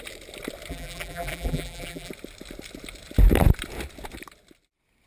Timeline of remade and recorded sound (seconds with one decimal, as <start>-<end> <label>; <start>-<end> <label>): 0.0-0.7 recorded; 0.7-2.1 remade; 2.1-5.1 recorded

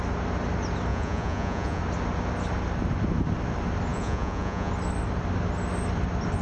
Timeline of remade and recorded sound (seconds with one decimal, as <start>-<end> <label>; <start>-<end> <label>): 0.0-0.9 recorded; 0.9-1.8 remade; 1.8-3.9 recorded; 3.9-4.7 remade; 4.7-6.4 recorded

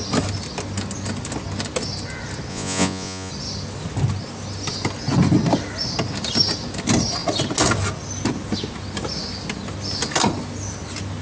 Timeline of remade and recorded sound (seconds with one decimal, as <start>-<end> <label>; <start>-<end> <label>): 0.0-2.5 recorded; 2.5-3.3 remade; 3.3-11.2 recorded